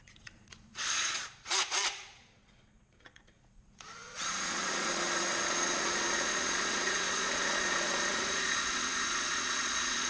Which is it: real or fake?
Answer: fake